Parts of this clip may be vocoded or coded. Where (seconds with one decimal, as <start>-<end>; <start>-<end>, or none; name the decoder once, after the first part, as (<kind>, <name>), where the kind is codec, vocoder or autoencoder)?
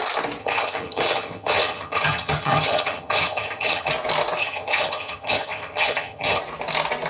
0.4-3.9 (vocoder, HiFi-GAN); 4.4-6.4